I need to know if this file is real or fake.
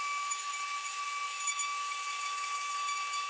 fake